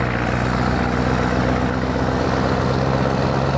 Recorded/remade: recorded